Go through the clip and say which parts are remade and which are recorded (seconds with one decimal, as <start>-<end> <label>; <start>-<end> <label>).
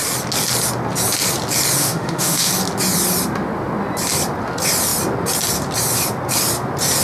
0.0-1.8 recorded; 1.8-2.5 remade; 2.5-7.0 recorded